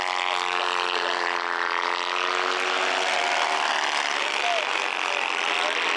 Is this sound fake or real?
real